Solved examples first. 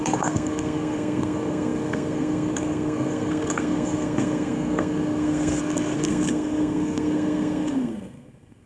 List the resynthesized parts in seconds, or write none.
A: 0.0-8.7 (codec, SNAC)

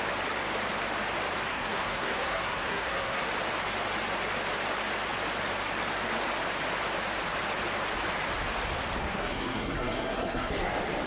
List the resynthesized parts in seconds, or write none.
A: 1.5-3.3 (codec, SNAC); 9.0-10.5

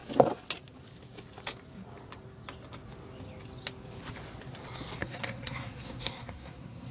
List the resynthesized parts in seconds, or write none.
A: 5.0-6.9 (codec, SNAC)

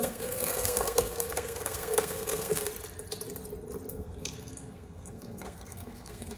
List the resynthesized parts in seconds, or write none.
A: 0.0-2.7 (codec, SNAC); 3.9-6.4

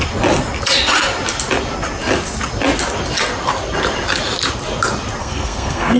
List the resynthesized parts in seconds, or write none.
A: 5.2-6.0 (codec, SNAC)

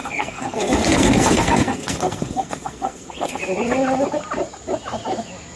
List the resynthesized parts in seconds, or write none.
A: 0.0-3.4 (codec, SNAC)